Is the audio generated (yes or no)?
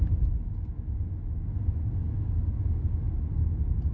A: no